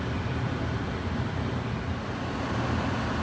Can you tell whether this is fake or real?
fake